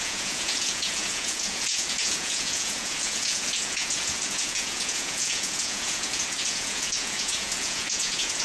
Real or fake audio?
fake